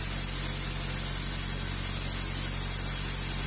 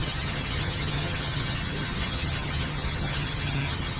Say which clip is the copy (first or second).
second